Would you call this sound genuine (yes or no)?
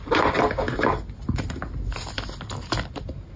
yes